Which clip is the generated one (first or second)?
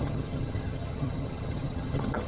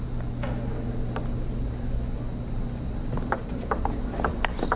first